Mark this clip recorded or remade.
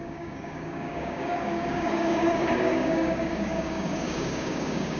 remade